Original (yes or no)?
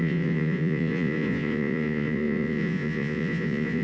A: no